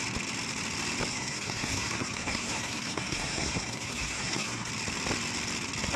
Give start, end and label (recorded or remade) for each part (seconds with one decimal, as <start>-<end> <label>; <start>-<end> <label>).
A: 0.0-1.1 recorded; 1.1-4.7 remade; 4.7-6.0 recorded